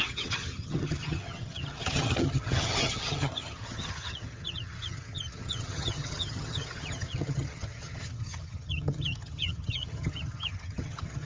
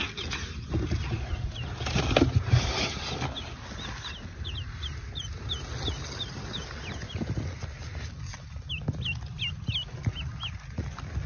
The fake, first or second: first